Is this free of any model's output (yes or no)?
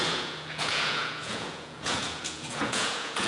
no